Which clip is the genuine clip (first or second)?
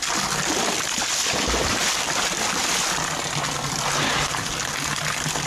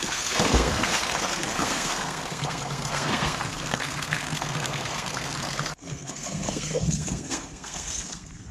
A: first